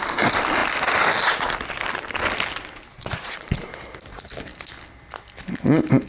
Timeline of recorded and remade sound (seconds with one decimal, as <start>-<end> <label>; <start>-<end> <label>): 0.0-2.9 recorded; 2.9-3.8 remade; 3.8-6.1 recorded